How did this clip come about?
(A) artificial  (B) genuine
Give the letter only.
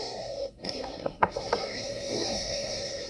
A